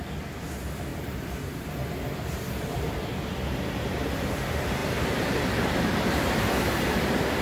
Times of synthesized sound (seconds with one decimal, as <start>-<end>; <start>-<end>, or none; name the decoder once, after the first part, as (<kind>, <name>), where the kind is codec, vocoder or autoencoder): 0.9-1.7 (vocoder, BigVGAN v2); 4.8-6.4